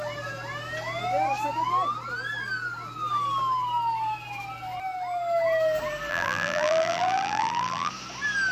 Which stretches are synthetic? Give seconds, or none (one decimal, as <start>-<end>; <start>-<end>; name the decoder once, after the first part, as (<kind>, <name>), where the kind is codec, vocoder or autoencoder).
6.1-7.9 (vocoder, BigVGAN v2)